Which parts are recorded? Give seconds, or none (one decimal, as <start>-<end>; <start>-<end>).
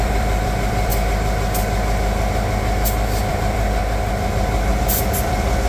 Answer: 0.9-3.3; 3.8-4.3; 4.7-5.7